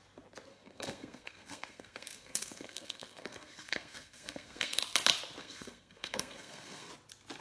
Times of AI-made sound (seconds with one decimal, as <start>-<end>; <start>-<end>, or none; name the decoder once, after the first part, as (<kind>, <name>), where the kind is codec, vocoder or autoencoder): 0.5-4.8 (codec, SNAC); 5.4-6.9